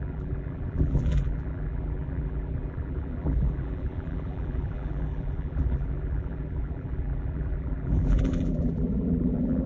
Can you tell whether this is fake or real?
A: fake